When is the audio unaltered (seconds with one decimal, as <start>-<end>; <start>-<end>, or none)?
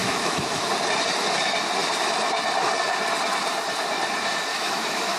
0.7-4.5